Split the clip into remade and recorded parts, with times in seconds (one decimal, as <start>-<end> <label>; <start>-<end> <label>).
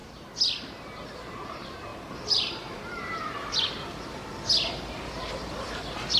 0.0-0.7 recorded; 0.7-4.2 remade; 4.2-4.7 recorded; 4.7-6.2 remade